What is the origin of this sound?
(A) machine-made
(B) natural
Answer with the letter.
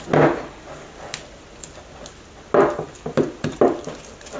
B